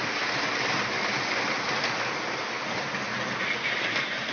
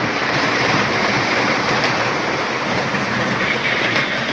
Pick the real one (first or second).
first